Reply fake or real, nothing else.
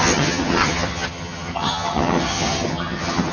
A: fake